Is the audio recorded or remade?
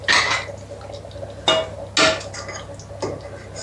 recorded